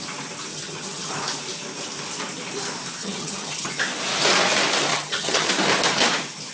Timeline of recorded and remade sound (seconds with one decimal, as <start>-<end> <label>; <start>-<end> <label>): 0.0-0.5 recorded; 0.5-1.1 remade; 1.1-3.0 recorded; 3.0-3.7 remade; 3.7-4.9 recorded; 4.9-5.5 remade; 5.5-6.5 recorded